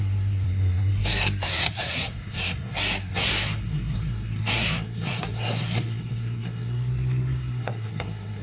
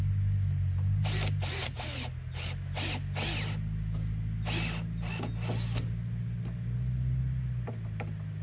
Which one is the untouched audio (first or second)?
second